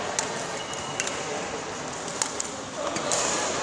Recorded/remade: recorded